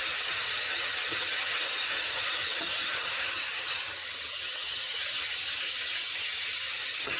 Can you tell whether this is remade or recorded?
remade